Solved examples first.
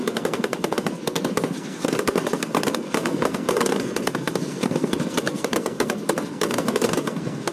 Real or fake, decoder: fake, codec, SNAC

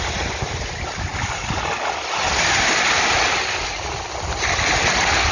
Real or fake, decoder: real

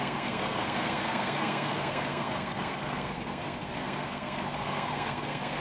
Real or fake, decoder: fake, codec, SNAC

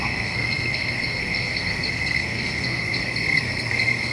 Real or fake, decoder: fake, codec, SNAC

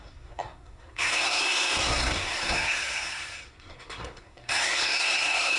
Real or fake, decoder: fake, codec, SNAC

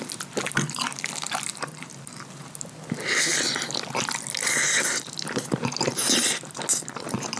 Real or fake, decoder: real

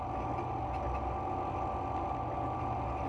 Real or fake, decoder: real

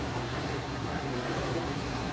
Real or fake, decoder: fake, codec, SNAC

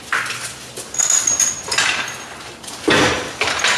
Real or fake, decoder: real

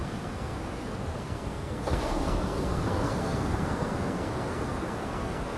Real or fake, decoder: fake, codec, SNAC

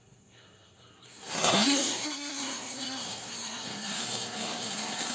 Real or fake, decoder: fake, codec, SNAC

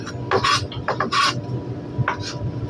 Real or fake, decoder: real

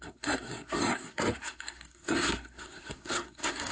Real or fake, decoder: fake, codec, SNAC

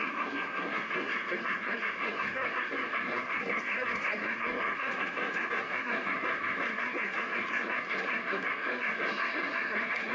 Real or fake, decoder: fake, codec, SNAC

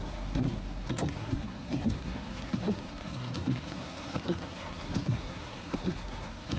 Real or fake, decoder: fake, codec, SNAC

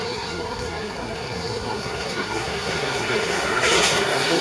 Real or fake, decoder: fake, codec, SNAC